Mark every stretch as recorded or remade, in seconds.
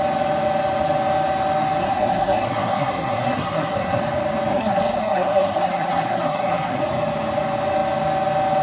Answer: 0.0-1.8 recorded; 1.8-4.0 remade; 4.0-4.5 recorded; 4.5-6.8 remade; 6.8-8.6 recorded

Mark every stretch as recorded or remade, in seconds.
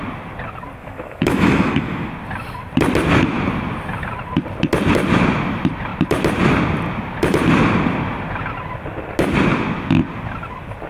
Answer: 0.0-0.8 recorded; 0.8-2.1 remade; 2.1-10.9 recorded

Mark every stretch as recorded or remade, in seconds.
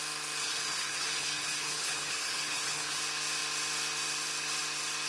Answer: 0.0-0.4 recorded; 0.4-3.0 remade; 3.0-5.1 recorded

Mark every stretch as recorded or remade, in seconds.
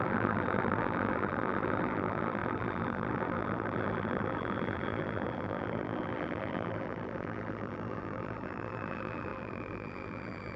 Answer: 0.0-10.6 remade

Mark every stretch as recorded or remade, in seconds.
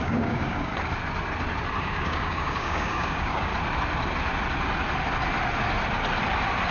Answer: 0.0-0.7 remade; 0.7-1.8 recorded; 1.8-3.5 remade; 3.5-6.7 recorded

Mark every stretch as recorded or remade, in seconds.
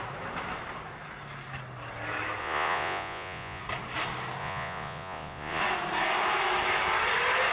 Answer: 0.0-2.4 recorded; 2.4-3.6 remade; 3.6-4.4 recorded; 4.4-5.6 remade; 5.6-7.5 recorded